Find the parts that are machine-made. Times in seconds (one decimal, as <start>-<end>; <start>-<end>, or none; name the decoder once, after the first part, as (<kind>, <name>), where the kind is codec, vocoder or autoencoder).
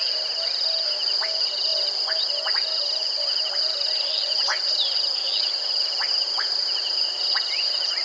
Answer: none